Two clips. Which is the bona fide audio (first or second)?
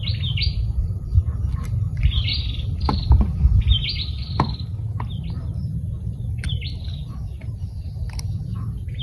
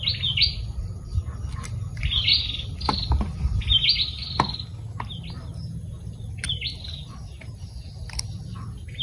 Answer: second